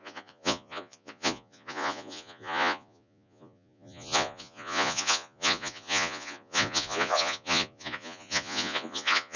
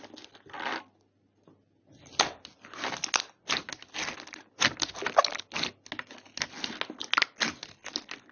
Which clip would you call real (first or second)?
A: second